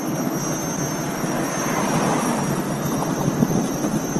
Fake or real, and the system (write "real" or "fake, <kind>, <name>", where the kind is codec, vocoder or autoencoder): real